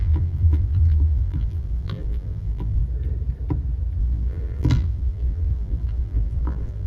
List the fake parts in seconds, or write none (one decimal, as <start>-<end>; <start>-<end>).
0.0-2.8; 4.0-6.9